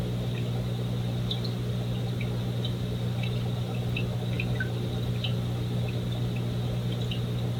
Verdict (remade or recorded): recorded